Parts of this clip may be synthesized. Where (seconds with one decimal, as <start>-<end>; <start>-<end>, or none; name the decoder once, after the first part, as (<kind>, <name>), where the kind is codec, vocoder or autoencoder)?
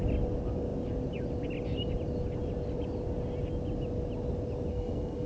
4.7-5.3 (codec, SNAC)